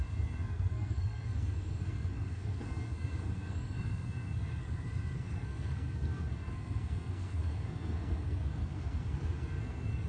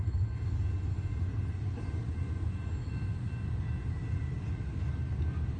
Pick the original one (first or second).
second